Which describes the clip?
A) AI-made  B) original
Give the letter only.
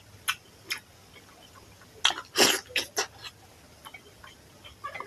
B